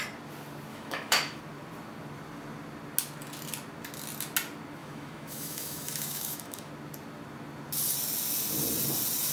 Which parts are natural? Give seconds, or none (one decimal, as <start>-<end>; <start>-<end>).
0.0-0.7; 1.4-4.8; 6.7-9.3

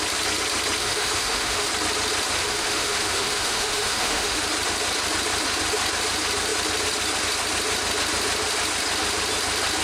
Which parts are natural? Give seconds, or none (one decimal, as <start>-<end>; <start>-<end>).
0.0-0.8; 1.7-2.4; 4.4-9.8

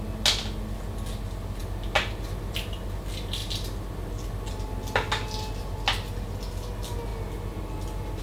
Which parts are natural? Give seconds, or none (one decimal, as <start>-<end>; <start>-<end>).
0.0-8.2

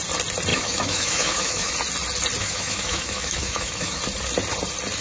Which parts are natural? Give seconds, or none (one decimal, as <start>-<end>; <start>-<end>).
0.0-0.5; 1.7-2.4; 4.0-5.0

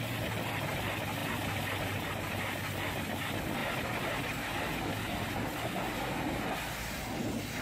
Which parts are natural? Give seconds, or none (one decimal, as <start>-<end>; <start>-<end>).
0.0-7.6

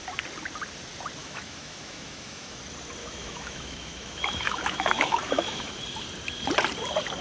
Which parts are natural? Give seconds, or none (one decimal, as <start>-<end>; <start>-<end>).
0.0-1.2; 2.6-3.0; 5.8-7.2

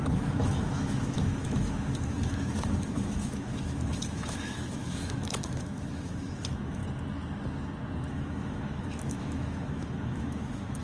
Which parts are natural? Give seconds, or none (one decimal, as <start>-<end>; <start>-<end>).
6.8-8.1

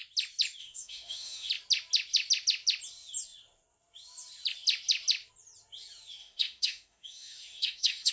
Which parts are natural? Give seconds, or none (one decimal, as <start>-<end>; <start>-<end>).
0.0-0.6; 1.5-6.2